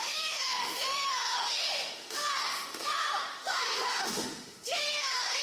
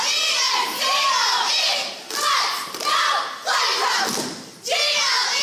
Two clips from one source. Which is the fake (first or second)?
first